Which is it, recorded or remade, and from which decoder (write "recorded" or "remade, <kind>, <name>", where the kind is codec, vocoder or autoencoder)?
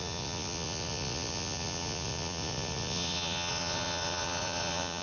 remade, vocoder, Vocos